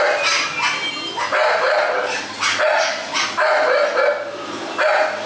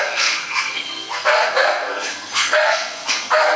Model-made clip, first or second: second